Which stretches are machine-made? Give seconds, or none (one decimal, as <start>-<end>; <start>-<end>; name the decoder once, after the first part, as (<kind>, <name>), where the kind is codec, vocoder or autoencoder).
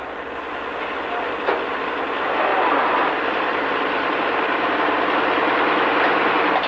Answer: none